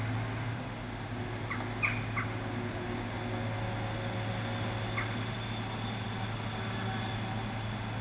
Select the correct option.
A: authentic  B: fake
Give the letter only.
A